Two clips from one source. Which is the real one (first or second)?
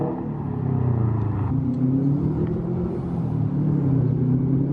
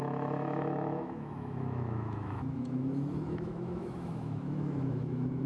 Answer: first